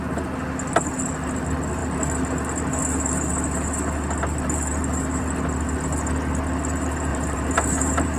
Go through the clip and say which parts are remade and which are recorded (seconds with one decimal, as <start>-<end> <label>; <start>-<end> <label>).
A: 0.0-7.1 recorded; 7.1-8.2 remade

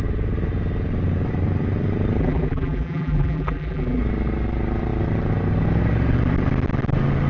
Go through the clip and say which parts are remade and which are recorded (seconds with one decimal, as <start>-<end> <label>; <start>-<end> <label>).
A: 0.0-2.2 recorded; 2.2-4.0 remade; 4.0-7.3 recorded

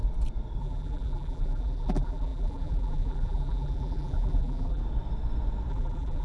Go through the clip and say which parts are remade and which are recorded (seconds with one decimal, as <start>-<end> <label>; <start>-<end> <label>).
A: 0.0-0.6 recorded; 0.6-4.8 remade; 4.8-5.7 recorded; 5.7-6.2 remade

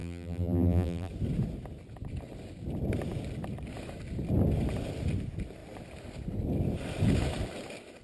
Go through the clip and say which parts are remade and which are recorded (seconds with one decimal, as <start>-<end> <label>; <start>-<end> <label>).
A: 0.0-1.1 remade; 1.1-8.0 recorded

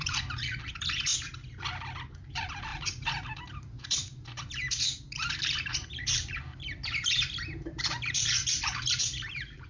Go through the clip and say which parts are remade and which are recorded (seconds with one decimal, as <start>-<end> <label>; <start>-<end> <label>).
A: 0.0-1.1 remade; 1.1-2.1 recorded; 2.1-9.7 remade

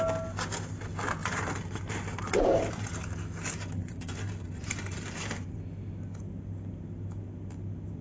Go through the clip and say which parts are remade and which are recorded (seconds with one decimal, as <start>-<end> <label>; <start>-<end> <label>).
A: 0.0-1.2 recorded; 1.2-2.7 remade; 2.7-3.8 recorded; 3.8-5.6 remade; 5.6-8.0 recorded